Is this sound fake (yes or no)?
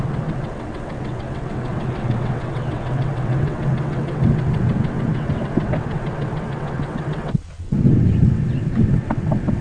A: yes